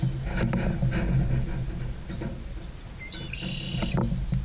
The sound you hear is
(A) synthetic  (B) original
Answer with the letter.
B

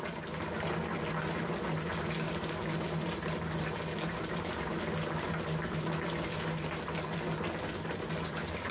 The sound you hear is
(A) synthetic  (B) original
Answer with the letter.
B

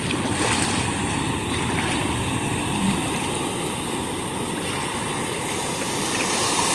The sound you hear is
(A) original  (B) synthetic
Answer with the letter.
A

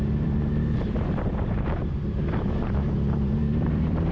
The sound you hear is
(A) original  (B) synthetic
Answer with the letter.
B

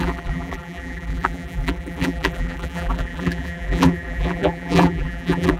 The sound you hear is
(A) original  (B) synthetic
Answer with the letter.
B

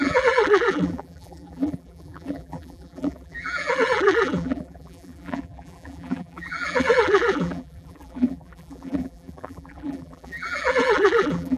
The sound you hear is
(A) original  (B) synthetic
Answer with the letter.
B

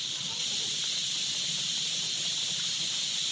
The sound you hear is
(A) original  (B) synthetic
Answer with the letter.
A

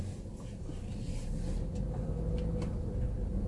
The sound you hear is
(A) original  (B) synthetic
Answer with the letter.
A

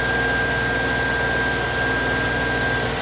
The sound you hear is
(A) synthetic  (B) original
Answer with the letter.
B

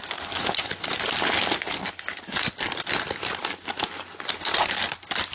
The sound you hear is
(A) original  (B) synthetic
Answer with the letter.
A